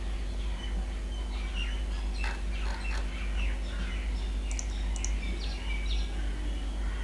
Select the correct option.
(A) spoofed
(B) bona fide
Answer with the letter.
B